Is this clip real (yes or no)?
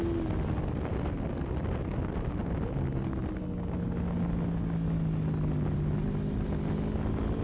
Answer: yes